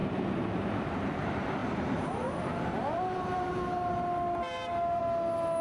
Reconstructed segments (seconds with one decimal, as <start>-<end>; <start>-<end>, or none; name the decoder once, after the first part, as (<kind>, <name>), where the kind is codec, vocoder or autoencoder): 0.0-0.9 (vocoder, BigVGAN v2); 1.6-5.0